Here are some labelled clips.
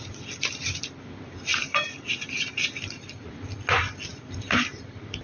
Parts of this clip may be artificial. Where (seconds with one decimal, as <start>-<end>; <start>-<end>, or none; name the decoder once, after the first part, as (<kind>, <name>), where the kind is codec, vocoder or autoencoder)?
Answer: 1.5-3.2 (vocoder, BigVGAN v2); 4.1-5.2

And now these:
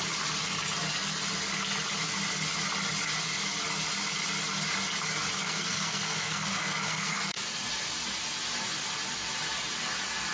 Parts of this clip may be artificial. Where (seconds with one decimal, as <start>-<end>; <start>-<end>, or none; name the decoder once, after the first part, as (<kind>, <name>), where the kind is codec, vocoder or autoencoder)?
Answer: 5.4-7.4 (codec, SNAC)

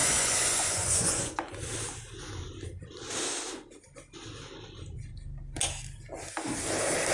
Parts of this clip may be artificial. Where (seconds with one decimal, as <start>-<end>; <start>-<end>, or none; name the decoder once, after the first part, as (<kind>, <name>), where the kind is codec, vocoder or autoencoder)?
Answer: 0.0-1.5 (vocoder, Vocos)

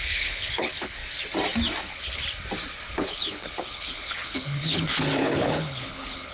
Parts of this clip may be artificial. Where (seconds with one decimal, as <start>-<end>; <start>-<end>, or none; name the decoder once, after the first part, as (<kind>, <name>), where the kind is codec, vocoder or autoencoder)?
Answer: 0.0-1.0 (codec, HILCodec); 1.8-2.2; 2.9-6.3

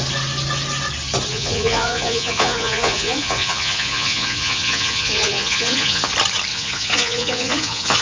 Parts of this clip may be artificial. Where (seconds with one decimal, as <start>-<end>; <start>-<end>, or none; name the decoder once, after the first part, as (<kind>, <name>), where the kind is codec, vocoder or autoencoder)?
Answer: 1.3-6.1 (vocoder, Vocos); 6.5-8.0